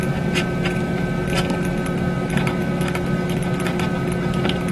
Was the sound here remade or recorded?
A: recorded